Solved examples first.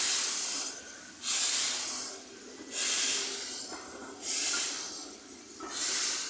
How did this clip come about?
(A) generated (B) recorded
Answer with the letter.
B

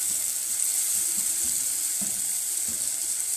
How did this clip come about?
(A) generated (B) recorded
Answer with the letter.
B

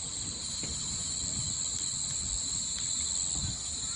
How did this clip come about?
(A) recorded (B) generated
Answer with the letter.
A